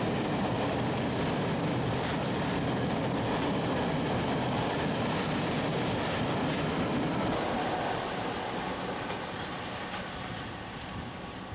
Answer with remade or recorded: recorded